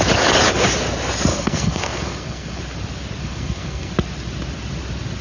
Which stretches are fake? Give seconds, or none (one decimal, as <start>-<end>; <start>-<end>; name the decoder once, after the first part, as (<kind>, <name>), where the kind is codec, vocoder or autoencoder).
1.3-2.6 (codec, SNAC); 3.2-3.9